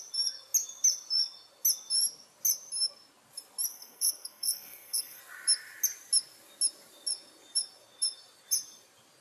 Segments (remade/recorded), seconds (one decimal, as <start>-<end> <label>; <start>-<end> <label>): 0.0-3.7 recorded; 3.7-5.2 remade; 5.2-9.2 recorded